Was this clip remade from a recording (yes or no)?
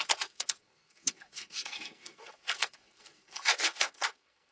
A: yes